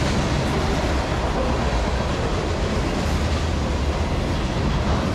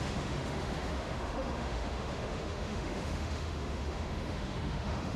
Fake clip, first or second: second